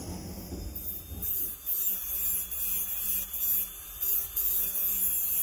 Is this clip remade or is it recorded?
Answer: recorded